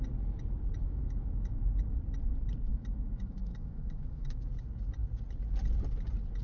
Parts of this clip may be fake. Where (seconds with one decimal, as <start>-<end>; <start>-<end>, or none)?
0.8-1.6; 2.7-4.4